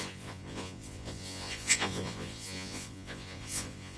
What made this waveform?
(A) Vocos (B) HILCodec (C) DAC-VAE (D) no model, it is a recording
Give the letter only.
A